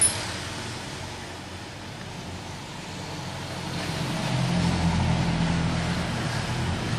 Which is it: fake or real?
real